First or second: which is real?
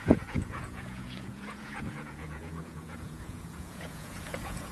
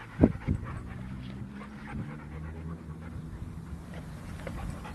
second